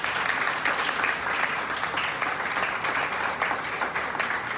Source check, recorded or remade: recorded